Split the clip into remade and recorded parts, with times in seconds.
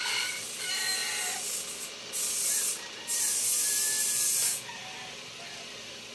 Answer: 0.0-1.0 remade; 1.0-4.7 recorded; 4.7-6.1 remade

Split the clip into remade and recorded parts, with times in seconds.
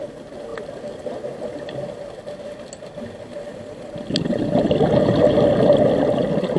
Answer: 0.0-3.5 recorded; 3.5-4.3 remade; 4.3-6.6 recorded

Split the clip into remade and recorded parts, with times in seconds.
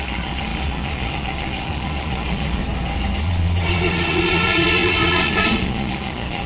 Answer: 0.0-2.6 remade; 2.6-3.2 recorded; 3.2-6.5 remade